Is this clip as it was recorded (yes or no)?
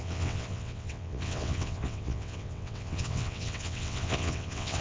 no